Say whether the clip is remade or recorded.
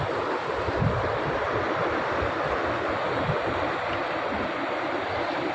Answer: remade